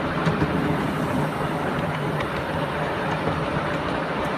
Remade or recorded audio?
recorded